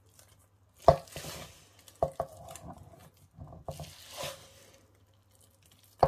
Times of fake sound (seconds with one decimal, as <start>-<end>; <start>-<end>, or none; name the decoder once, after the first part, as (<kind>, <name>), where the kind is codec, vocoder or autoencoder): none